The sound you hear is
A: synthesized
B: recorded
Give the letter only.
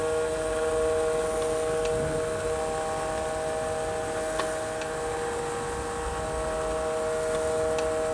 B